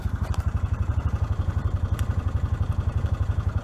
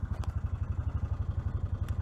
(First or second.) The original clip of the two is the second